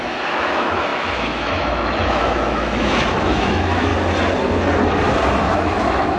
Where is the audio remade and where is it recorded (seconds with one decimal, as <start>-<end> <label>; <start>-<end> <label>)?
0.0-3.9 remade; 3.9-5.4 recorded; 5.4-6.2 remade